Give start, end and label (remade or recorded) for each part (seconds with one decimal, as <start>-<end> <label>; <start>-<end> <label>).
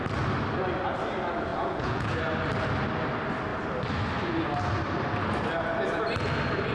0.0-1.5 recorded; 1.5-2.2 remade; 2.2-6.7 recorded